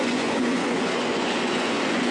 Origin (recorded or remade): remade